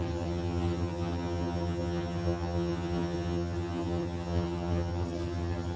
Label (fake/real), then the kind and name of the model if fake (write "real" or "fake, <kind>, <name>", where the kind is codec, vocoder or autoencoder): fake, vocoder, HiFi-GAN